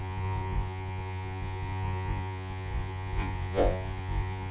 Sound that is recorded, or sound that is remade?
remade